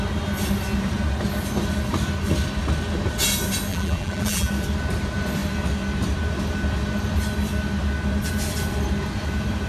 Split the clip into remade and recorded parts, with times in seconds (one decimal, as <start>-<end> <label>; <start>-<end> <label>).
0.0-3.7 recorded; 3.7-4.5 remade; 4.5-9.7 recorded